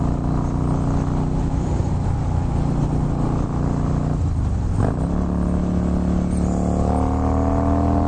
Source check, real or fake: real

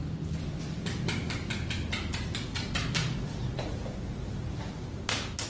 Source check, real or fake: real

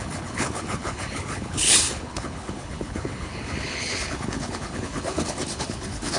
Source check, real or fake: fake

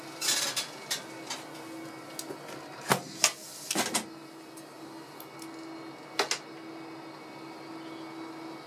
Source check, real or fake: real